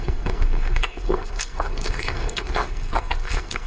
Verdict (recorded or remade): remade